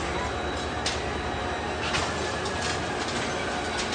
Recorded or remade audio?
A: recorded